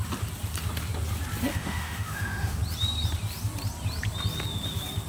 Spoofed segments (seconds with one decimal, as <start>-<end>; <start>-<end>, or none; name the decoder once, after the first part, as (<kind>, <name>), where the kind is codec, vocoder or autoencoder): 1.5-2.6 (autoencoder, DAC-VAE)